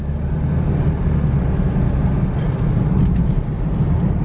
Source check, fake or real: real